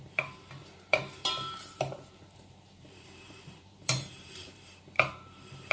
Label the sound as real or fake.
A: fake